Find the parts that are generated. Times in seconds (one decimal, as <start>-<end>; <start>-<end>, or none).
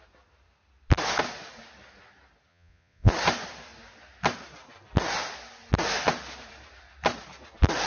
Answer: 2.5-3.1